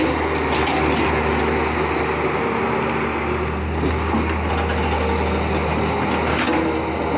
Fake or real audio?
real